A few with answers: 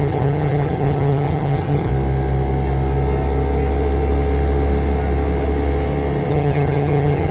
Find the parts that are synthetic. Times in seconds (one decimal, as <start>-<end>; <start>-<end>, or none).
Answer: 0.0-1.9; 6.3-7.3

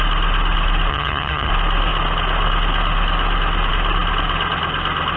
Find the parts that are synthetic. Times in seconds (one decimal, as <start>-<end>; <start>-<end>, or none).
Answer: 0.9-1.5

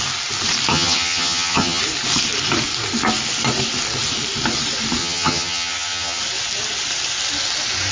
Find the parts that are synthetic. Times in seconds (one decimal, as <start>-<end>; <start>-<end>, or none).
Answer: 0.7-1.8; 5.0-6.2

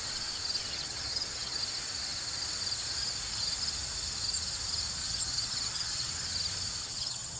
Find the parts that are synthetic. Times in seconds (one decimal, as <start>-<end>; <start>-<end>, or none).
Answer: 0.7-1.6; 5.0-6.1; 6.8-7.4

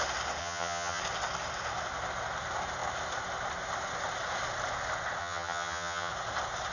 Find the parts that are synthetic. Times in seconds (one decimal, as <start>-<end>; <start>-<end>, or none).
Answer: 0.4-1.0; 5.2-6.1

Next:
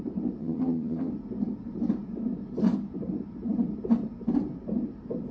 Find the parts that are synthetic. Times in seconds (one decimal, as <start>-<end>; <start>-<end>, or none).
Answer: 0.4-1.1